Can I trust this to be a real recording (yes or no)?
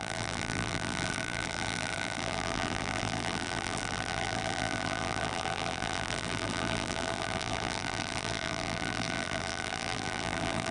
no